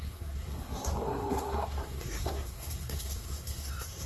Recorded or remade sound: remade